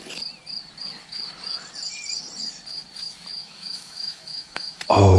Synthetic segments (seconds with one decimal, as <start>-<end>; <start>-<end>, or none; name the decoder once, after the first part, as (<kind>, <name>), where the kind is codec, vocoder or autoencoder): 3.4-4.8 (autoencoder, DAC-VAE)